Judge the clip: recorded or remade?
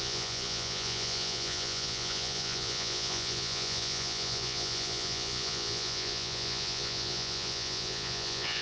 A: remade